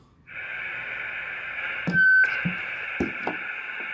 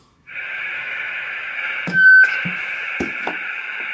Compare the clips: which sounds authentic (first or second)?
first